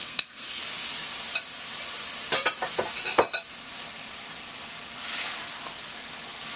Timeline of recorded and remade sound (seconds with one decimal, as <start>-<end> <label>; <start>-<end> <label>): 0.0-0.6 remade; 0.6-6.6 recorded